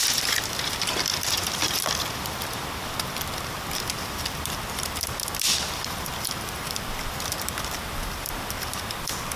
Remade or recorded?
remade